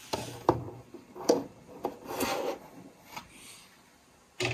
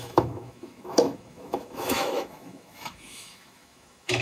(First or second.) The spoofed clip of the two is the second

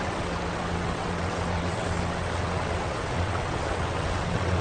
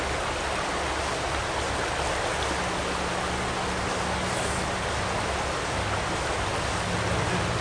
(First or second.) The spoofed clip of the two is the first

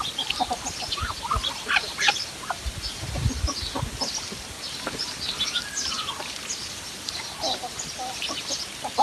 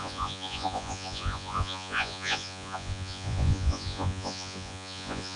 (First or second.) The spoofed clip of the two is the second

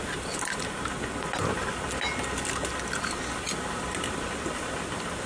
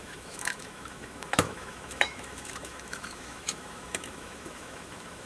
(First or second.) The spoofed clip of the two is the second